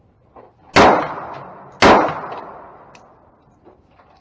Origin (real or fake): real